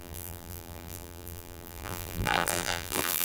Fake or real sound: fake